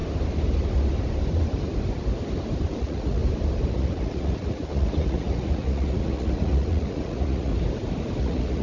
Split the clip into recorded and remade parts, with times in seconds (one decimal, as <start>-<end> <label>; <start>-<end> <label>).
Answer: 0.0-2.8 recorded; 2.8-3.2 remade; 3.2-3.7 recorded; 3.7-7.5 remade; 7.5-8.2 recorded; 8.2-8.6 remade